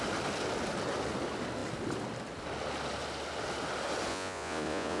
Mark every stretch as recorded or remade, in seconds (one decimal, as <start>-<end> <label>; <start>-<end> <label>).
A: 0.0-4.1 recorded; 4.1-5.0 remade